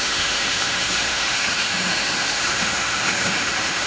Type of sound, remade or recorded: remade